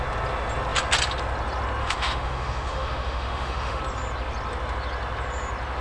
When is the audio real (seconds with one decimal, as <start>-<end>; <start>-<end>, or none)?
0.0-1.8; 3.8-5.8